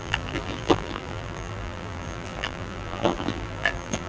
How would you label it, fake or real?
fake